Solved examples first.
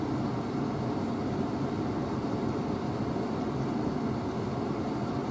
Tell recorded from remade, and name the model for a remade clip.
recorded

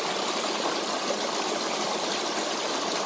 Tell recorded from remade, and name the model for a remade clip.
recorded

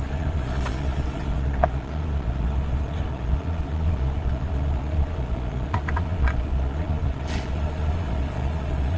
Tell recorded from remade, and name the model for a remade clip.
remade, vocoder, Vocos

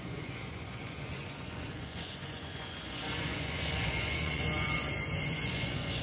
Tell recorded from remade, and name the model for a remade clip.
remade, vocoder, Vocos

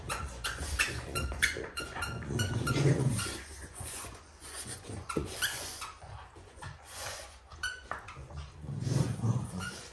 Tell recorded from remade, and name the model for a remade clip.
remade, vocoder, Vocos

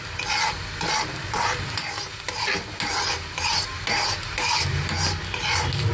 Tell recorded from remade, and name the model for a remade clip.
recorded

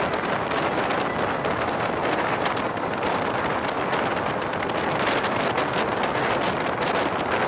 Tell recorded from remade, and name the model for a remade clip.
recorded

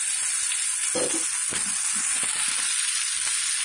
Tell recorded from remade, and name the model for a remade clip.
recorded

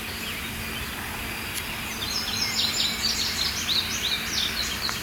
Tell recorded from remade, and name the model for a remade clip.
recorded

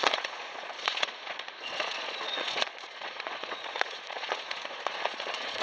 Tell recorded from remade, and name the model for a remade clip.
remade, vocoder, Vocos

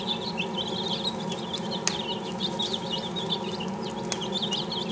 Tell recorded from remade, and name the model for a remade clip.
recorded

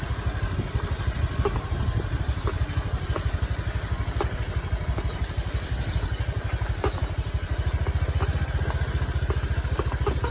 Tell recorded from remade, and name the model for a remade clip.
recorded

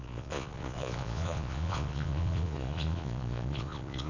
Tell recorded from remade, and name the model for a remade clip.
remade, vocoder, Vocos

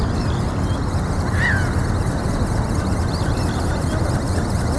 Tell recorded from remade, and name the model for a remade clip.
recorded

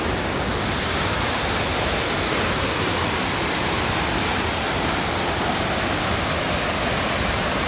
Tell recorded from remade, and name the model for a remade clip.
recorded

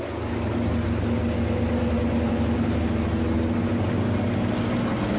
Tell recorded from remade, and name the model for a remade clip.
recorded